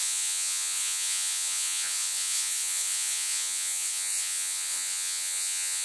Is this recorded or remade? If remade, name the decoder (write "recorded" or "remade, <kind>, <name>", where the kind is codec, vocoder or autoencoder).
remade, vocoder, Vocos